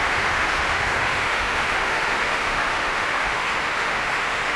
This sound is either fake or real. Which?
fake